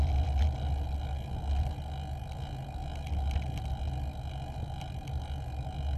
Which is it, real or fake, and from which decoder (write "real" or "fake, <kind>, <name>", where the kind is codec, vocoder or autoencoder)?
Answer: real